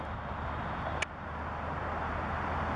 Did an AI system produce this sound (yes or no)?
no